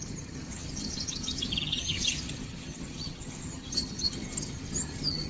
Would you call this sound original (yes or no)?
no